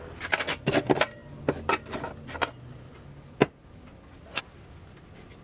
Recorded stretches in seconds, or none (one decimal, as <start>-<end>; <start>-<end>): 0.0-5.4